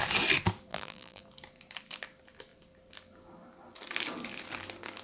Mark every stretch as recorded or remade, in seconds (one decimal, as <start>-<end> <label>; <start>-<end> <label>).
0.0-0.7 recorded; 0.7-1.2 remade; 1.2-5.0 recorded